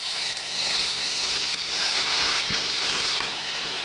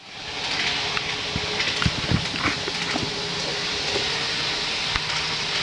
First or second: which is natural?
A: second